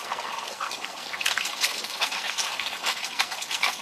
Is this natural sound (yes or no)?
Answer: no